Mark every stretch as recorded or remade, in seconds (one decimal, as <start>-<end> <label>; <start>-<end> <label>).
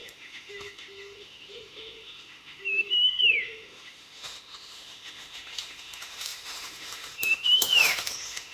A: 0.0-8.5 remade